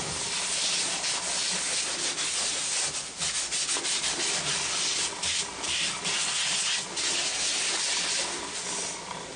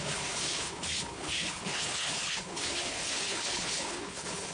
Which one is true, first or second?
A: first